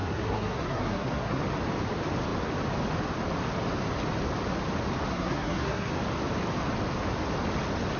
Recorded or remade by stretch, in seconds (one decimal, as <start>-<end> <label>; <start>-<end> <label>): 0.0-1.4 remade; 1.4-5.1 recorded; 5.1-5.9 remade; 5.9-8.0 recorded